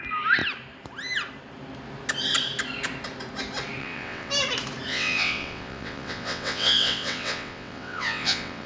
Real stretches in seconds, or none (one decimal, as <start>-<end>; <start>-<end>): 0.0-3.8; 4.3-4.9